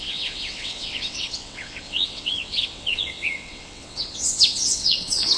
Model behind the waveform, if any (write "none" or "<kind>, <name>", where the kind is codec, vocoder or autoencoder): vocoder, WaveNeXt